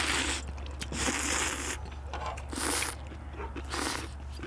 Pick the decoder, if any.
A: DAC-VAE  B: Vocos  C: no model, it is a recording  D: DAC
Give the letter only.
C